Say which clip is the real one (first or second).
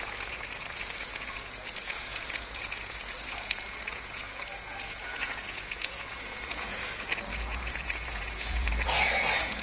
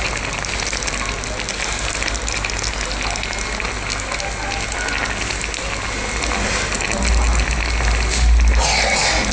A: second